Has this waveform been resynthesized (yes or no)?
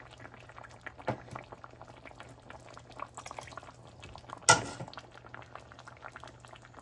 no